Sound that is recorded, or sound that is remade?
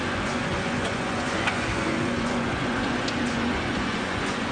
remade